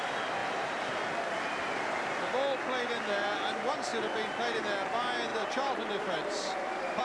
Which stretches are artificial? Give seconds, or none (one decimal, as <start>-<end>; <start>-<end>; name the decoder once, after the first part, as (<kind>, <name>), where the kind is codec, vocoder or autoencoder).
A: 0.4-1.0 (vocoder, BigVGAN v2); 5.3-7.0